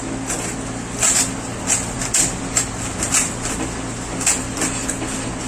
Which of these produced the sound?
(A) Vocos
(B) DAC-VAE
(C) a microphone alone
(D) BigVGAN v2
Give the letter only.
C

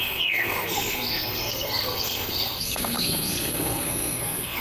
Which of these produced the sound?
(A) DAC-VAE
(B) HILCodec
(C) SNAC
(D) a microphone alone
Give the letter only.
C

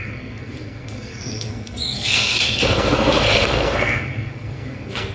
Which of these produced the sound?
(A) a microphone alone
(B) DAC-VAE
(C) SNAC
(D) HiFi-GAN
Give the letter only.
C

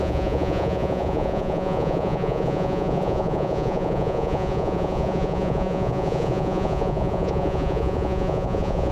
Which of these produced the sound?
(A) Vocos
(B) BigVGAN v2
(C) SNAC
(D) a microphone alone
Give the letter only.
A